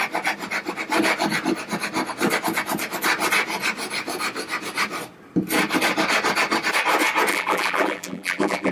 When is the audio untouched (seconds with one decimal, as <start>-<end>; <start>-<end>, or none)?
0.0-7.3